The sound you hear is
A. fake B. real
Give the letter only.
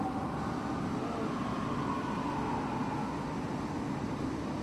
B